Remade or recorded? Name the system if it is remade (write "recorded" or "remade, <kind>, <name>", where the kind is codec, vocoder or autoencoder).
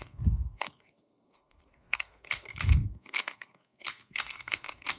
remade, codec, SNAC